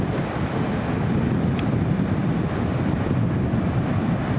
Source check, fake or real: real